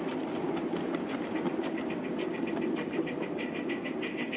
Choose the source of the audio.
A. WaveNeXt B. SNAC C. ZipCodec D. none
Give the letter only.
D